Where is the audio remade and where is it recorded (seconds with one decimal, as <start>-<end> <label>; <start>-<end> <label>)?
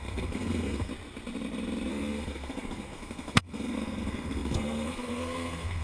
0.0-0.9 remade; 0.9-1.9 recorded; 1.9-5.8 remade